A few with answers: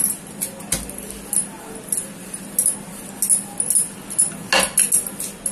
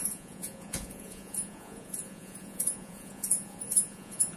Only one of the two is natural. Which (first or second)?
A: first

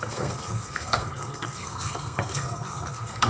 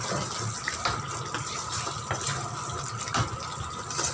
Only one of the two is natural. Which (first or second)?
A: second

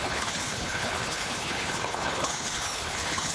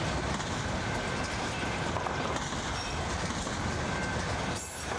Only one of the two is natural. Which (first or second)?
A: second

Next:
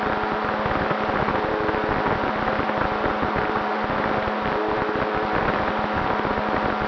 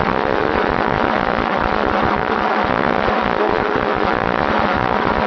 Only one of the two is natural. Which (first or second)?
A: first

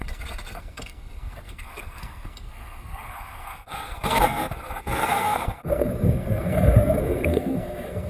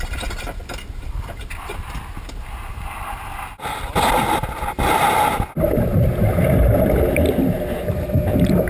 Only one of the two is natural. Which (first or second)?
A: second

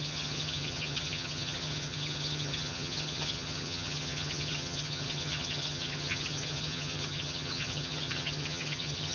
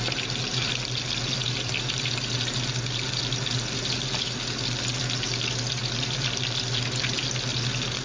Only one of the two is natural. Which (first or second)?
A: second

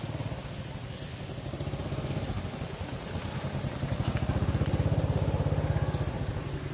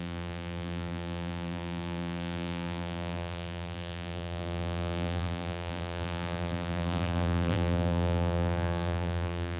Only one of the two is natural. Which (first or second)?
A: first